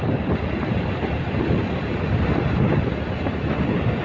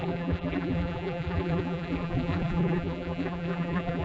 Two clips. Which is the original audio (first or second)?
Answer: first